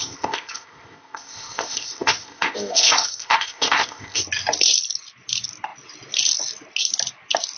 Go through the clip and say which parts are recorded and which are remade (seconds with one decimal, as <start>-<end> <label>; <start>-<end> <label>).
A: 0.0-4.2 remade; 4.2-7.6 recorded